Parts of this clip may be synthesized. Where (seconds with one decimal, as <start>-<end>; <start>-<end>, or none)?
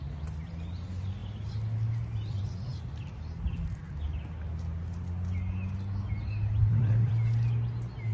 6.6-7.1